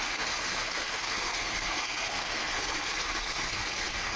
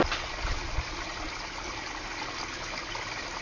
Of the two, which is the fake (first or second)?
first